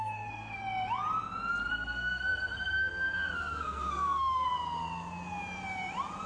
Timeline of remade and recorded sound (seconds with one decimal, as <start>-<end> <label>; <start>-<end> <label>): 0.0-0.6 remade; 0.6-1.7 recorded; 1.7-4.5 remade; 4.5-6.3 recorded